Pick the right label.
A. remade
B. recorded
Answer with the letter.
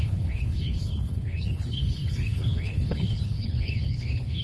A